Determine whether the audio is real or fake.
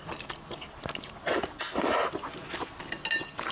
real